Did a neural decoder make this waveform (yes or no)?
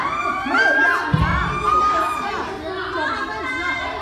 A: no